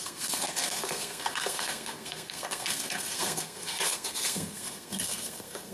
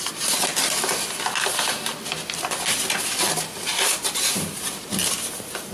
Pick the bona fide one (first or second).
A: second